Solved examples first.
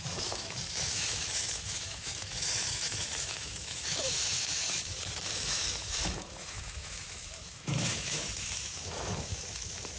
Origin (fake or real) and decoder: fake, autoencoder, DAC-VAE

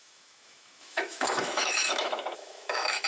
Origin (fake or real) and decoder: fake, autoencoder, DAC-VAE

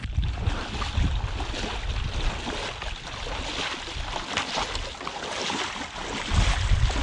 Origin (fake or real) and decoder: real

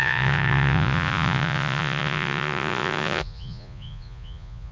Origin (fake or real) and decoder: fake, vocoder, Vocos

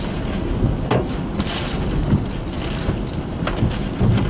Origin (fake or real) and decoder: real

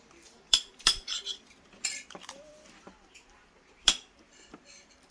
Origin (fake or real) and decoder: fake, vocoder, BigVGAN v2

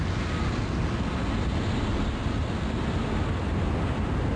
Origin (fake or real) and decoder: real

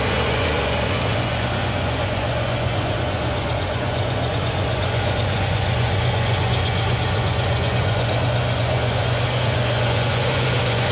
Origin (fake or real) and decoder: fake, vocoder, Vocos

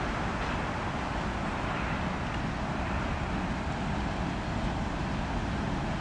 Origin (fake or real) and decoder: real